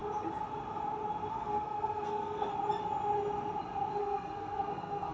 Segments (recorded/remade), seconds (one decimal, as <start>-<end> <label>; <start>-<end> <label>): 0.0-1.3 recorded; 1.3-2.5 remade; 2.5-4.0 recorded; 4.0-5.1 remade